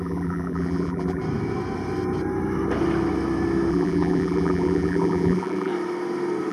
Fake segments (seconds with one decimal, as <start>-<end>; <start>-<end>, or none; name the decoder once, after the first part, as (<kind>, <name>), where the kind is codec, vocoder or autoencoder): 0.0-1.2 (vocoder, BigVGAN v2); 3.7-5.7